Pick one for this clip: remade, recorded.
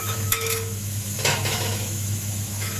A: remade